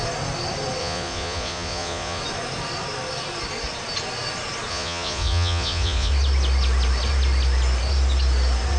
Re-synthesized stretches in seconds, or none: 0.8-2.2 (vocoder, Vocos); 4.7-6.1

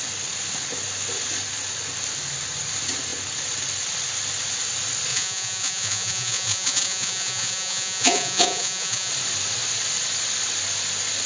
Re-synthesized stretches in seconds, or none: 5.1-9.1 (vocoder, Vocos)

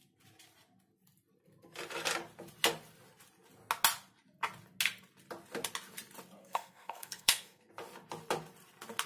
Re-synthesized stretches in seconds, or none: 6.4-7.7 (codec, SNAC)

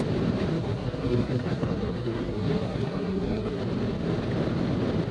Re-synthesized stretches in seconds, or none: 0.5-3.6 (codec, SNAC)

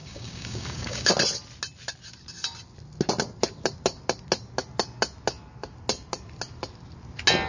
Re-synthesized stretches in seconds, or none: 0.0-1.1 (codec, DAC)

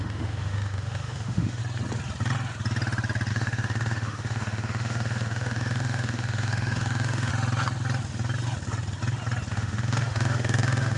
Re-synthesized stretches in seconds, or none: 0.0-1.6 (autoencoder, DAC-VAE); 3.3-7.3; 9.5-11.0

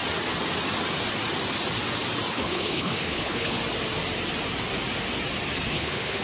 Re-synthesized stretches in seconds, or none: 2.3-3.6 (codec, HILCodec); 5.7-6.2

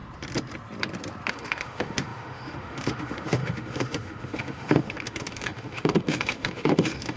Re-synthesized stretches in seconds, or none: 1.3-7.2 (autoencoder, DAC-VAE)